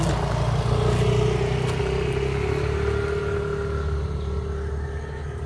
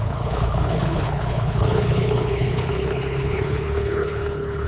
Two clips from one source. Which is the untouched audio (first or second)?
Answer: first